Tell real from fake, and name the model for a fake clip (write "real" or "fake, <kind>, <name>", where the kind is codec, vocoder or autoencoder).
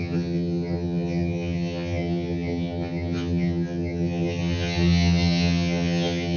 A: fake, vocoder, HiFi-GAN